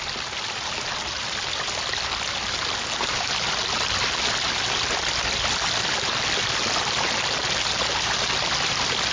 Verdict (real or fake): real